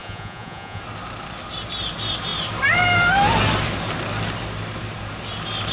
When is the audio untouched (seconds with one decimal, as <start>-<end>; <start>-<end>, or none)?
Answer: 0.8-5.7